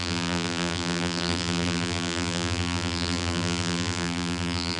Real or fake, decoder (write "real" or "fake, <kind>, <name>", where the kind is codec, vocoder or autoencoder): fake, vocoder, BigVGAN v2